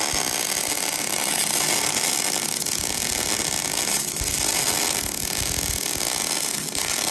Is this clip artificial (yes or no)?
no